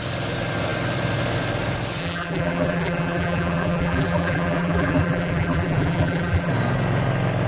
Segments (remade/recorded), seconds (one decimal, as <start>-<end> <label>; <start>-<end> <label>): 0.0-2.0 recorded; 2.0-6.5 remade; 6.5-7.5 recorded